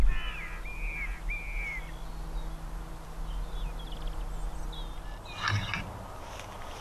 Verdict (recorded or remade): recorded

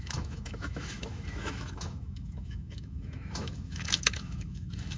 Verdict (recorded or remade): remade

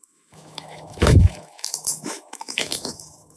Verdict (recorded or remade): remade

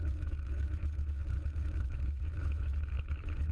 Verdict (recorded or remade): remade